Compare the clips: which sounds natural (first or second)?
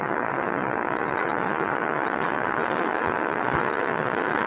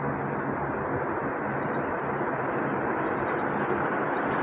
second